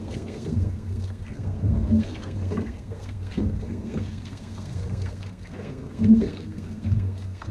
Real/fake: fake